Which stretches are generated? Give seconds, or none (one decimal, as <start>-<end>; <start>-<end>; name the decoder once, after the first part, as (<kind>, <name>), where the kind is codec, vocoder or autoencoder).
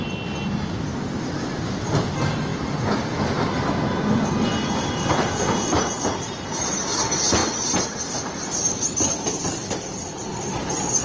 4.6-6.5 (vocoder, BigVGAN v2)